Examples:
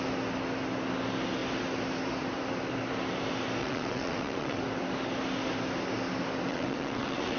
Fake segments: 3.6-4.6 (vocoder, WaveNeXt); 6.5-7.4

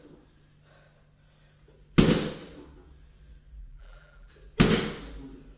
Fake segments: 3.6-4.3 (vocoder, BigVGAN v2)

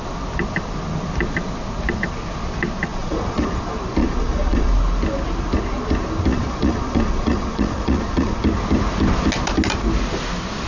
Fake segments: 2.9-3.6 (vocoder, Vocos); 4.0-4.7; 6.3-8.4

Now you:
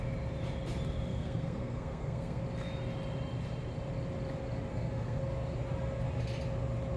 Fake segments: 1.1-2.4 (codec, SNAC); 4.7-5.2

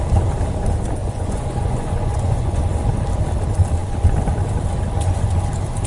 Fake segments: 1.0-2.6 (vocoder, Vocos)